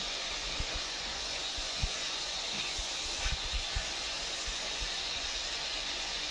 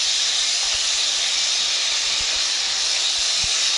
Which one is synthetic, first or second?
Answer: first